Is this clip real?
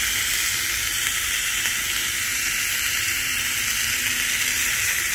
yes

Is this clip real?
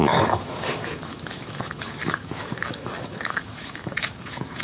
no